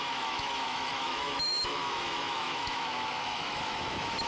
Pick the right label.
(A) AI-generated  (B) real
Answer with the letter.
A